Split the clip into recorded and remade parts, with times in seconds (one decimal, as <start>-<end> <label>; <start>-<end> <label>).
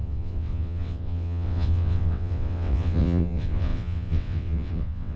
0.0-5.2 remade